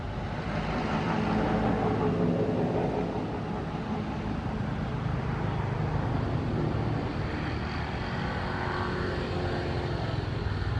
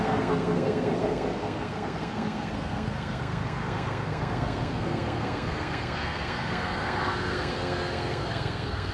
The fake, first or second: second